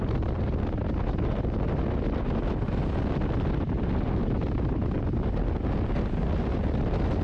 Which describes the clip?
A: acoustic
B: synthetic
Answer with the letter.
A